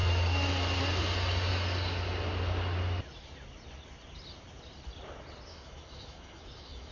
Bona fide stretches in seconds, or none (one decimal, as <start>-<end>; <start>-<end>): 0.0-5.5